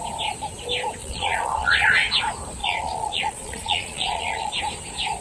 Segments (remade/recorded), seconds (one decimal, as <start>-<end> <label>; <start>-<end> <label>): 0.0-1.0 recorded; 1.0-2.2 remade; 2.2-2.6 recorded; 2.6-4.6 remade; 4.6-5.2 recorded